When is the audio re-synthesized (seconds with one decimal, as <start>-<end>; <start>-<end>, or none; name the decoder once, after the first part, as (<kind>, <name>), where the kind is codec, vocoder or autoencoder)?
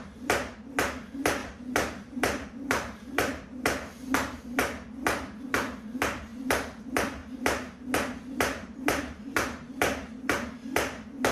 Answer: 1.4-4.4 (vocoder, BigVGAN v2); 7.2-9.7